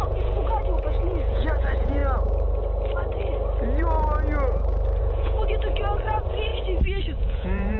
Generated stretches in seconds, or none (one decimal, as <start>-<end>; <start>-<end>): 0.0-2.0; 5.0-6.5; 7.0-7.8